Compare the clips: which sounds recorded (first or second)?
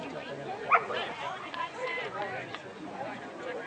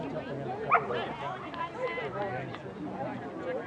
second